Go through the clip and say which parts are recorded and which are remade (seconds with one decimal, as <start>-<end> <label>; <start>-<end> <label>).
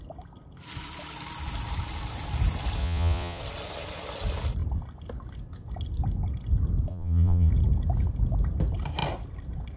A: 0.0-2.8 recorded; 2.8-3.4 remade; 3.4-6.9 recorded; 6.9-7.5 remade; 7.5-9.8 recorded